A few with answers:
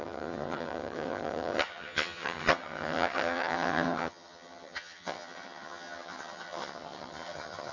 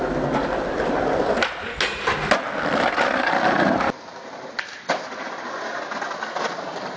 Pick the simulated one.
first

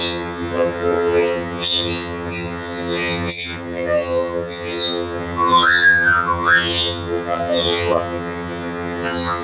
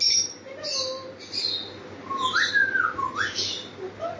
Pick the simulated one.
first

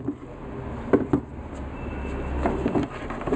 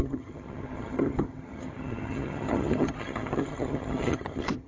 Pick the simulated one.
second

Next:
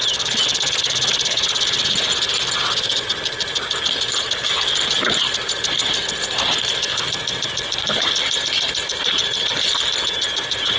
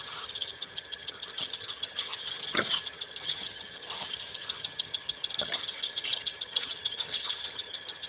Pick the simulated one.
second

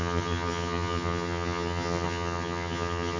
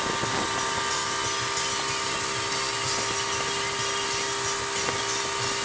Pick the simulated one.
first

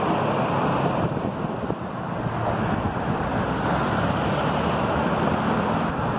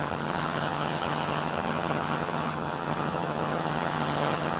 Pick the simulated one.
second